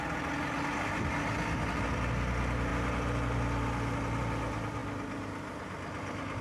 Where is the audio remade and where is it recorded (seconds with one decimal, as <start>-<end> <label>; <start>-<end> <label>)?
0.0-6.4 recorded